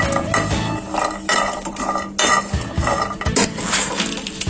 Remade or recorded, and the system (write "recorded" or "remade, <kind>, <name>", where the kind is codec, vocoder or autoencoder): recorded